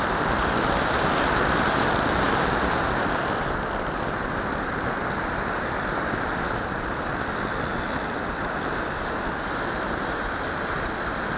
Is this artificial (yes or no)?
yes